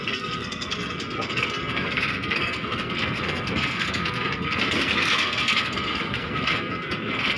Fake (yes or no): yes